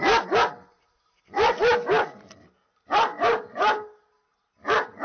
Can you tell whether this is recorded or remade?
recorded